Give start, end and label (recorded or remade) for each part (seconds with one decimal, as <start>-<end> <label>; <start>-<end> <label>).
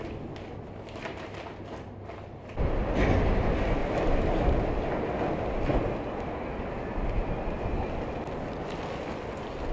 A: 0.0-3.8 recorded; 3.8-4.4 remade; 4.4-9.7 recorded